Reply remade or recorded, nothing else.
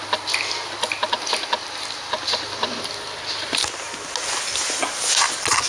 recorded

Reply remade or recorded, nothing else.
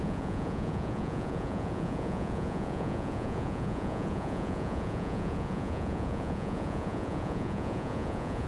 remade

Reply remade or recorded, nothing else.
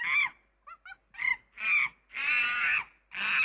recorded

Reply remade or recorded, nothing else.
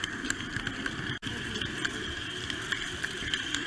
remade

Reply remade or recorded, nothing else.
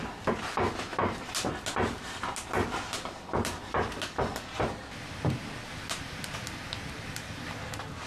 recorded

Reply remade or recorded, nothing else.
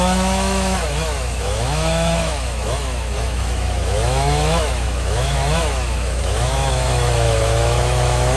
remade